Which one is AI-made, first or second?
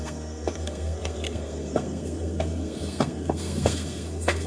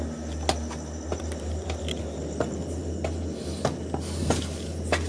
first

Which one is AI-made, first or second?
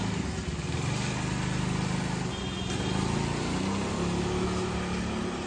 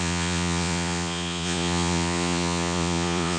second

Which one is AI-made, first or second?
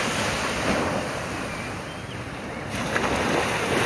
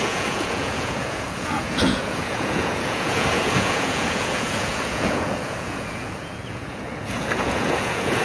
second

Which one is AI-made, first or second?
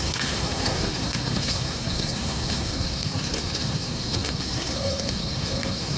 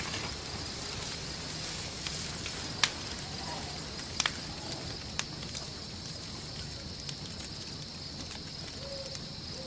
first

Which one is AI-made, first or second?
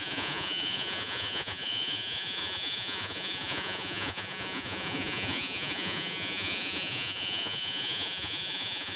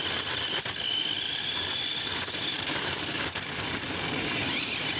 first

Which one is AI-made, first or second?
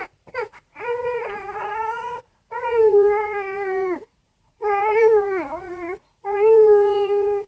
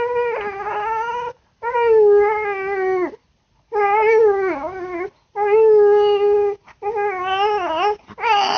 first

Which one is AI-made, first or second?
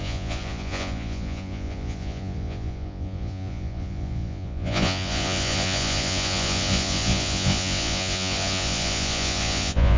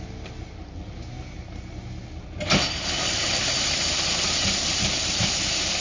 first